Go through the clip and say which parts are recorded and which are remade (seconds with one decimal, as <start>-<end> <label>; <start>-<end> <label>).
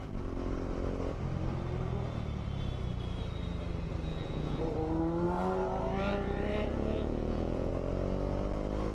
0.0-4.1 recorded; 4.1-4.6 remade; 4.6-6.7 recorded; 6.7-7.7 remade; 7.7-8.9 recorded